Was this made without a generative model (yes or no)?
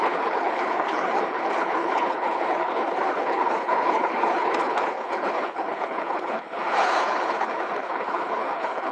no